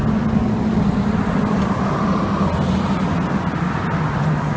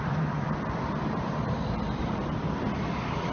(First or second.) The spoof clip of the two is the second